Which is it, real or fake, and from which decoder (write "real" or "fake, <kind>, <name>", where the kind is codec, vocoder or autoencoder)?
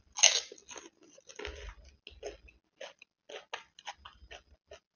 real